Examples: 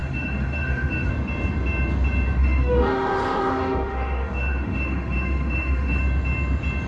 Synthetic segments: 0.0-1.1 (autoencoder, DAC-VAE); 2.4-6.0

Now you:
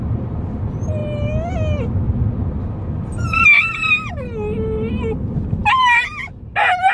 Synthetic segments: none

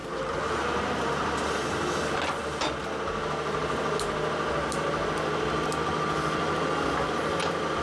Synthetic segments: 0.0-1.9 (vocoder, BigVGAN v2)

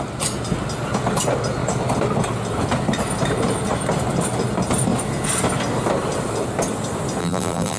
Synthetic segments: 7.2-7.8 (vocoder, BigVGAN v2)

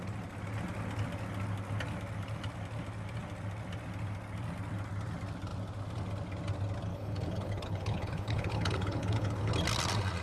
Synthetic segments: 6.9-9.5 (codec, HILCodec)